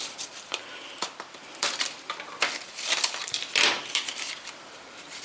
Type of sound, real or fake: fake